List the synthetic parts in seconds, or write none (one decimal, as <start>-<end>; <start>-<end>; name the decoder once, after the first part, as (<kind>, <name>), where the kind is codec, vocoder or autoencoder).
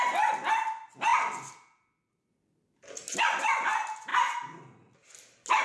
none